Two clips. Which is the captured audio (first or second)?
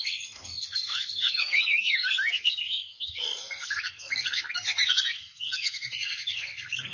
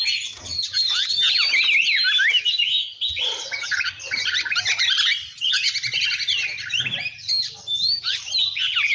second